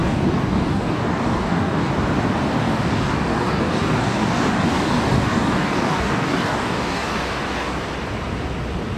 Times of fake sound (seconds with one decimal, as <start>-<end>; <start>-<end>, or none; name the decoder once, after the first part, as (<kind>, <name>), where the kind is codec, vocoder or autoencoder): 0.0-1.9 (codec, DAC); 2.6-7.8